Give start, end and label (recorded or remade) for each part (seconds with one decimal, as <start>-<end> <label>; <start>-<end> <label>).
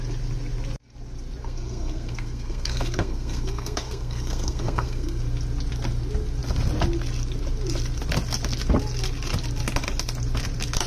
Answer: 0.0-1.4 recorded; 1.4-5.2 remade; 5.2-10.9 recorded